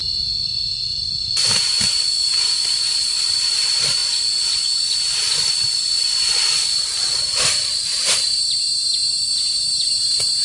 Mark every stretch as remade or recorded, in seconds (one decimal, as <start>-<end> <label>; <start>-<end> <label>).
0.0-1.2 recorded; 1.2-4.0 remade; 4.0-7.2 recorded; 7.2-10.4 remade